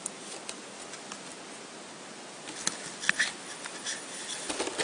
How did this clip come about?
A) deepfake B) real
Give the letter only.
B